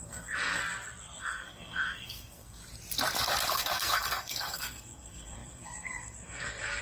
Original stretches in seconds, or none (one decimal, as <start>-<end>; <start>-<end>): 0.6-1.2; 2.6-3.5